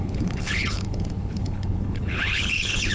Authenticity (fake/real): fake